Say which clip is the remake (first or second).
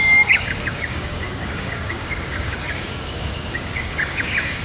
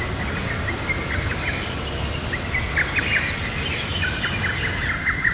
first